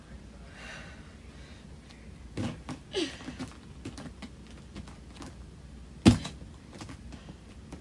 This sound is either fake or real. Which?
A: real